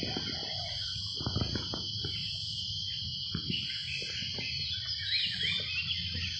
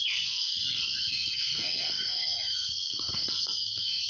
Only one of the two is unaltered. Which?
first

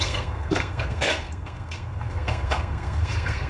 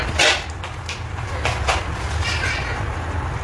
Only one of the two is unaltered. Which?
second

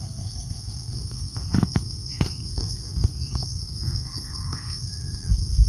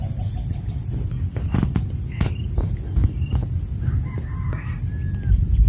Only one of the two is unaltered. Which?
second